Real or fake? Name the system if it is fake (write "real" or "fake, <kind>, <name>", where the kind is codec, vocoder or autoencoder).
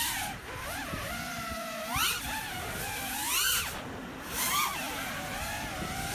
real